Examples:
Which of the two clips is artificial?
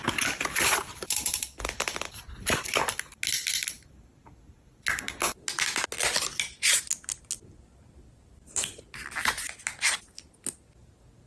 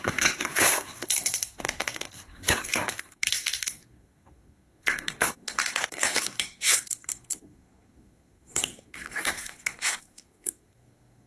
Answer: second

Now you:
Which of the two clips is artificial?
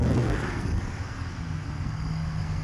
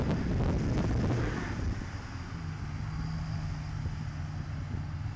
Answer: first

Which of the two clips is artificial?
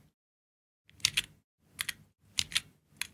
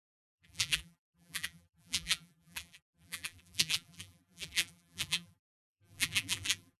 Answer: second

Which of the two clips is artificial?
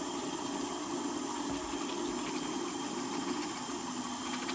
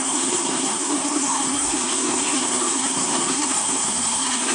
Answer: second